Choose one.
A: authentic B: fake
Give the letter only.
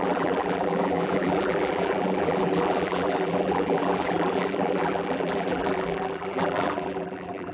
B